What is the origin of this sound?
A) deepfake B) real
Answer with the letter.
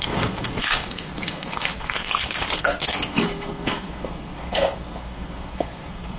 A